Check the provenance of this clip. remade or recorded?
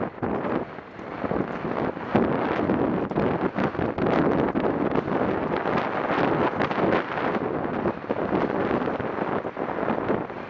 recorded